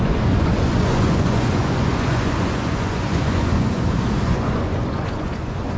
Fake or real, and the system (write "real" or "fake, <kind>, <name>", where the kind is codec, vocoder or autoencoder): fake, vocoder, Vocos